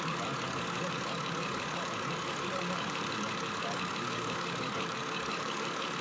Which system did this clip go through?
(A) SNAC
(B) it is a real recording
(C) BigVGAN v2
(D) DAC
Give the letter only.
D